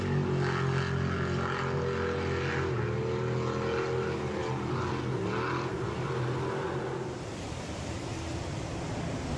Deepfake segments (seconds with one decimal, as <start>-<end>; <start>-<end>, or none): none